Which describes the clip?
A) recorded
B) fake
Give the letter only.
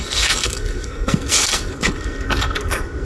B